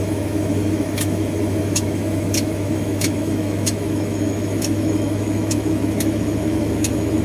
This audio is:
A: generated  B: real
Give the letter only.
A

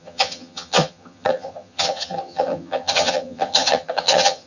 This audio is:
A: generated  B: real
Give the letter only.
A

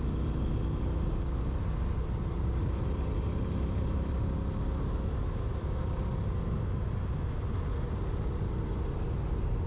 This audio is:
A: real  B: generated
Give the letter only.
A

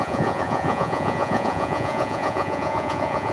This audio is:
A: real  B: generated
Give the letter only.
B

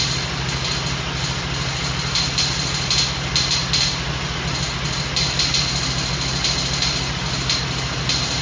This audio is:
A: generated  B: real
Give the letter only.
B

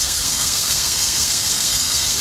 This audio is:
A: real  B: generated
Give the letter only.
B